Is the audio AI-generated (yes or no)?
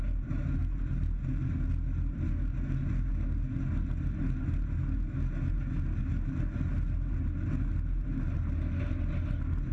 no